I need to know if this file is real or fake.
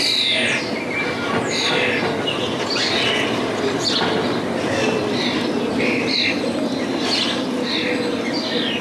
real